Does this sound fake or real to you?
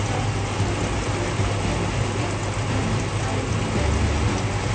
real